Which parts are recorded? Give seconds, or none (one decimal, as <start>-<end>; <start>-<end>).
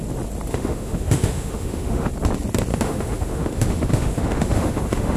0.0-0.5; 2.1-2.7